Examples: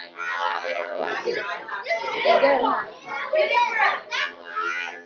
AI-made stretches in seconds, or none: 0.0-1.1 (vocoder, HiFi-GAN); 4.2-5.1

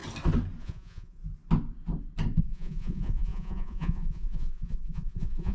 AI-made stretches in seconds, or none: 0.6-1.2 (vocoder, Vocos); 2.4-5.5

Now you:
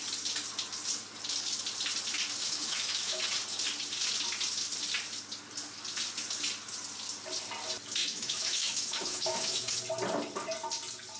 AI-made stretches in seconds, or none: 2.4-3.2 (autoencoder, DAC-VAE); 8.0-9.8